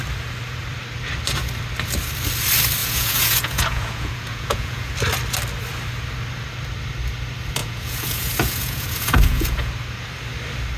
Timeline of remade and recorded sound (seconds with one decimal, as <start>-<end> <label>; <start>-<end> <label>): 0.0-2.8 recorded; 2.8-4.9 remade; 4.9-7.6 recorded; 7.6-9.7 remade; 9.7-10.8 recorded